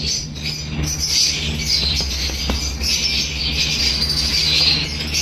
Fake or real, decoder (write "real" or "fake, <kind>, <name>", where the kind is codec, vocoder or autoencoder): real